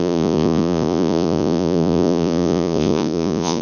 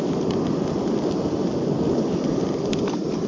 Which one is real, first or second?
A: second